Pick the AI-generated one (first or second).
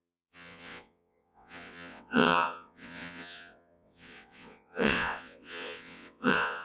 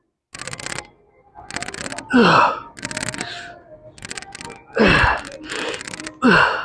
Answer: first